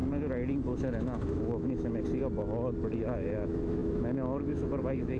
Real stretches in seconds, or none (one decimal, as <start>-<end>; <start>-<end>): 0.0-0.8; 2.0-3.0